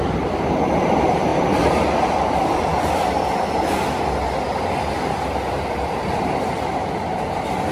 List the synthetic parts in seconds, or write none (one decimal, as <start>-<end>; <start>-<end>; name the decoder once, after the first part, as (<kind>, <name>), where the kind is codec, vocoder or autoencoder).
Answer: 0.0-2.7 (vocoder, BigVGAN v2); 6.2-7.7